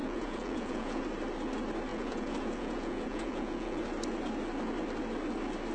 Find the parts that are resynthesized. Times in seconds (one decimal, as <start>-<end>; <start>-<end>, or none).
0.0-1.0; 1.9-3.8

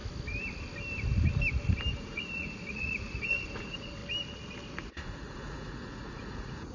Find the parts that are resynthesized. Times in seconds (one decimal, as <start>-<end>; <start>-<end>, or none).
1.9-4.0; 4.7-6.7

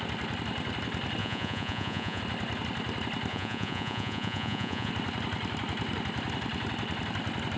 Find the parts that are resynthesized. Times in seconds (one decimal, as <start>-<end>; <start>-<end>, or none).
1.2-2.2; 3.3-4.9

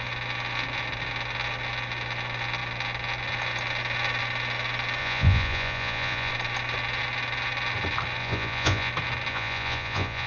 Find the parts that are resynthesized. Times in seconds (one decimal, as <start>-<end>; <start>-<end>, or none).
5.0-6.3; 8.2-8.9; 9.3-10.3

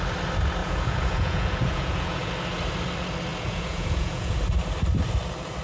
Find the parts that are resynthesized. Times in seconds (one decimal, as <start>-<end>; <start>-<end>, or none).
0.6-2.3; 3.3-4.4

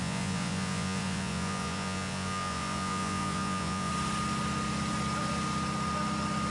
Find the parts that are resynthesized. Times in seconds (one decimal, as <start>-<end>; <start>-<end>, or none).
0.0-3.9

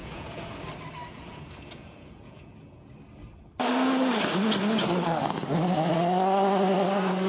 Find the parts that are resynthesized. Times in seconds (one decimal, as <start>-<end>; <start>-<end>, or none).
0.0-0.5; 1.1-2.9

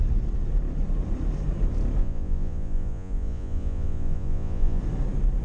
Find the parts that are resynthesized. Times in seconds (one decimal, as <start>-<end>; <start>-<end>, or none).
2.0-4.8